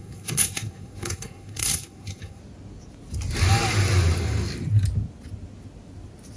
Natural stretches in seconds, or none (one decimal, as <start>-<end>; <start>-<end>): 2.4-6.4